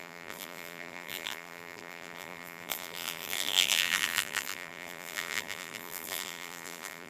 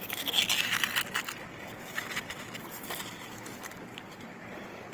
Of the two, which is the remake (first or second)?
first